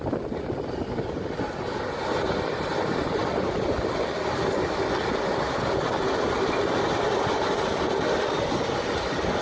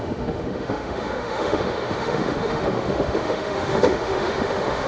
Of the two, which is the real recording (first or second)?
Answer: first